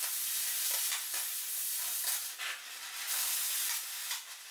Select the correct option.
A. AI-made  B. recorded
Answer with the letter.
A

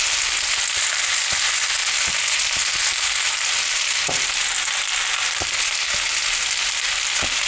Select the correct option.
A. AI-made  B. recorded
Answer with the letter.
B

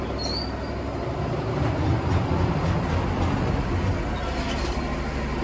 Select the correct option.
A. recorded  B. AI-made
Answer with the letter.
A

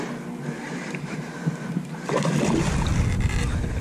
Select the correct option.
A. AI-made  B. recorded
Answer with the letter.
B